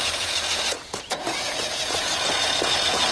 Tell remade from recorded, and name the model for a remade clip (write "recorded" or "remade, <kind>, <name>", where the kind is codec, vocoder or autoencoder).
remade, vocoder, Vocos